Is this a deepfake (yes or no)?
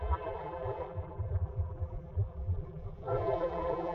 yes